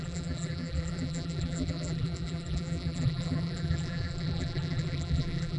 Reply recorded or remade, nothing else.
remade